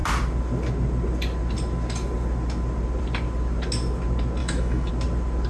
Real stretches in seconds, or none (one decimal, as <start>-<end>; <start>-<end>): 0.0-4.4; 4.9-5.5

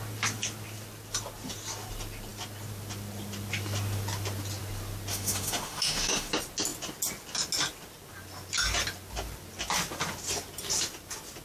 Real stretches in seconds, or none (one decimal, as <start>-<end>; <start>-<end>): 0.0-5.1; 6.3-11.4

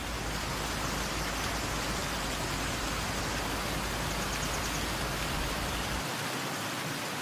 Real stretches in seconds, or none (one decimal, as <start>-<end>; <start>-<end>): 0.0-7.2

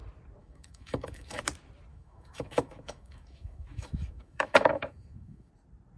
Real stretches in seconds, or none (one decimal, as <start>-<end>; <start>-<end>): 0.0-0.4; 1.4-1.9; 5.5-6.0